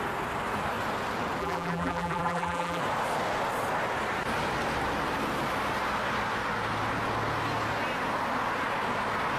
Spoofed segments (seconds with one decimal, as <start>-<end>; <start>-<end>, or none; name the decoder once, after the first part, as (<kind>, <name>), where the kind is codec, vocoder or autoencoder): 1.4-2.8 (vocoder, BigVGAN v2)